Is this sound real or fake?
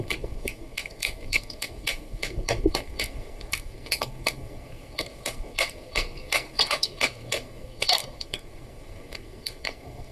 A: fake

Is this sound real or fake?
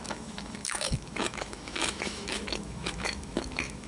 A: fake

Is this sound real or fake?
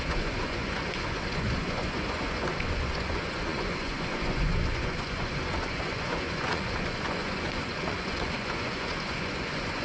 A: fake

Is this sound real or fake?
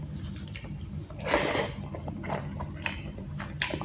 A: real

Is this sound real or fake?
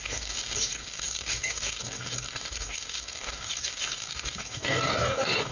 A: fake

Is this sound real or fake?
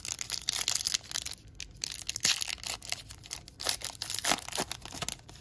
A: real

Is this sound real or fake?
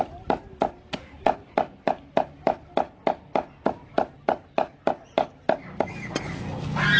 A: real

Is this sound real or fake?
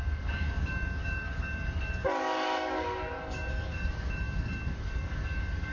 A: fake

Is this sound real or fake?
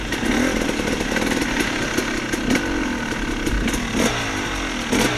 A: real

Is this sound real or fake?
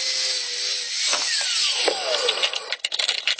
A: real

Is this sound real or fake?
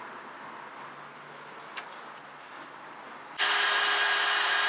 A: real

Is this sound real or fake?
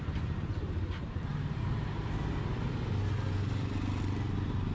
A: real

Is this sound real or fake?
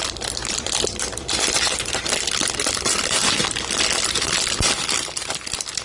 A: fake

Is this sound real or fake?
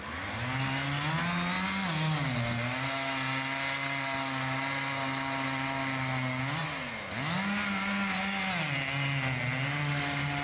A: real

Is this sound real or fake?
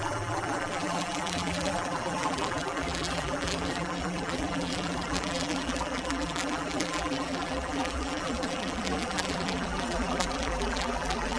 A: fake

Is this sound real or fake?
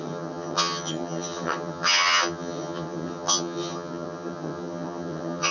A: fake